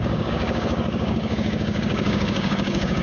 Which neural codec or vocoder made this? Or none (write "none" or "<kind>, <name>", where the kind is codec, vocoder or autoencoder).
codec, DAC